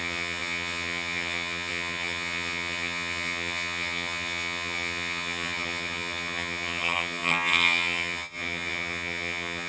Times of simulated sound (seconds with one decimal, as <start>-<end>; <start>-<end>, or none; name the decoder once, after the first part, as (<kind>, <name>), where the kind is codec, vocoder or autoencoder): 0.0-9.7 (vocoder, HiFi-GAN)